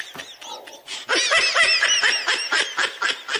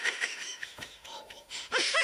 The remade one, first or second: second